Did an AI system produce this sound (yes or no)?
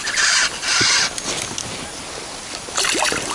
no